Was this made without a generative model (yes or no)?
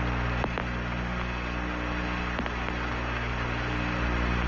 yes